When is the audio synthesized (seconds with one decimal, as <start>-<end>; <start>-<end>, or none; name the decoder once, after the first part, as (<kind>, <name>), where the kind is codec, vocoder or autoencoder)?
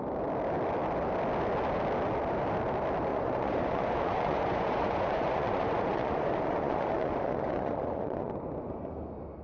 3.1-8.3 (vocoder, Vocos)